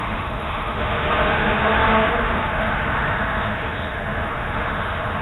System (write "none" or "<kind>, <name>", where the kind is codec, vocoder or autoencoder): autoencoder, DAC-VAE